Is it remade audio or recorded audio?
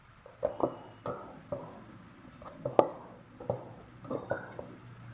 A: recorded